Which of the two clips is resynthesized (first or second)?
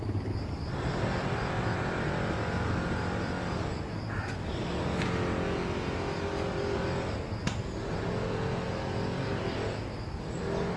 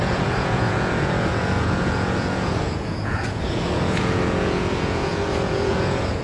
second